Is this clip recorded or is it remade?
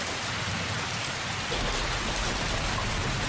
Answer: recorded